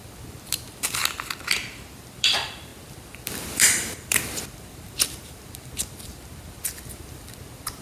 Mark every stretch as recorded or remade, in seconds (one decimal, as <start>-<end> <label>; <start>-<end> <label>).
0.0-1.0 remade; 1.0-1.9 recorded; 1.9-7.8 remade